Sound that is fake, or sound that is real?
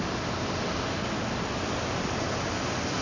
real